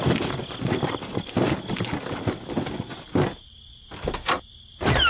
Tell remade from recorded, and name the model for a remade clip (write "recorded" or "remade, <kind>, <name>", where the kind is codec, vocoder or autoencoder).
recorded